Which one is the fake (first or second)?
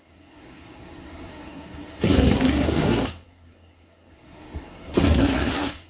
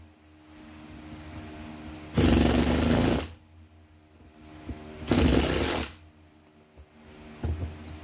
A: first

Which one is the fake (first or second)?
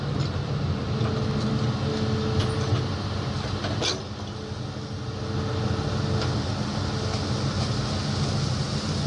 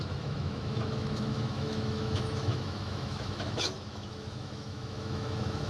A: second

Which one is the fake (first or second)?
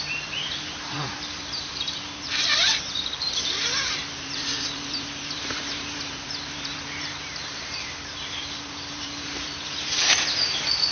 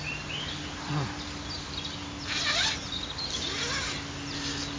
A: first